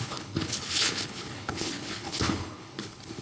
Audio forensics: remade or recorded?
remade